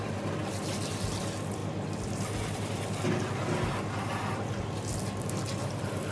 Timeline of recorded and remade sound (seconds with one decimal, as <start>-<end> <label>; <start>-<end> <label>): 0.0-6.1 recorded